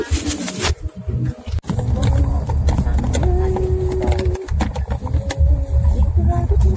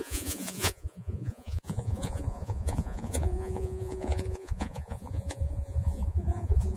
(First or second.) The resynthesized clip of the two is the second